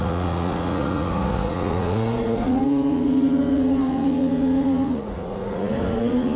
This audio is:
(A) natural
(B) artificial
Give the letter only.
B